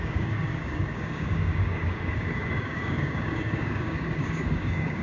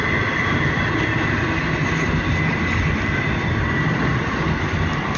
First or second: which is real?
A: second